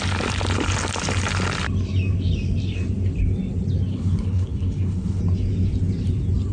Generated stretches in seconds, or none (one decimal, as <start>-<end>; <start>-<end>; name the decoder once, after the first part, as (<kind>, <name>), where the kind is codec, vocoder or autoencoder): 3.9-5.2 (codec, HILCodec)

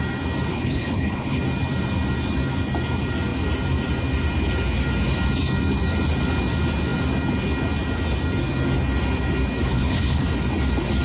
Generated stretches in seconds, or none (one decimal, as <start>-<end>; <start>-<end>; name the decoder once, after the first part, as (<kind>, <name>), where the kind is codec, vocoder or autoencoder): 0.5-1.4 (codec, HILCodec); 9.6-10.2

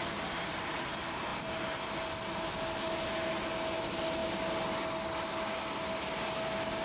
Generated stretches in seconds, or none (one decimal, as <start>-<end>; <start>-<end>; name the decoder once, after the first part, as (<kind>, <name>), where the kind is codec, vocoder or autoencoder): none